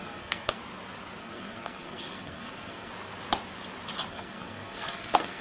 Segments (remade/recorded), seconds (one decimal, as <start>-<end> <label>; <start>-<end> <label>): 0.0-0.6 remade; 0.6-1.2 recorded; 1.2-2.9 remade; 2.9-4.1 recorded; 4.1-5.4 remade